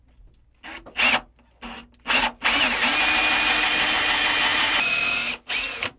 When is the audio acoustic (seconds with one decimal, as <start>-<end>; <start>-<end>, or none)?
0.0-4.5; 5.3-6.0